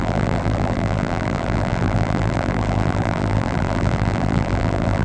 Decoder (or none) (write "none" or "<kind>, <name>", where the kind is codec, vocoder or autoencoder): vocoder, BigVGAN v2